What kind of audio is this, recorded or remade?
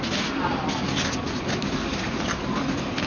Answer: recorded